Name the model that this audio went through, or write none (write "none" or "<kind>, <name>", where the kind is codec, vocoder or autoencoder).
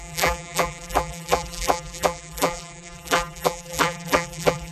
vocoder, BigVGAN v2